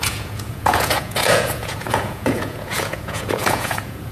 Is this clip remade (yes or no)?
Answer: yes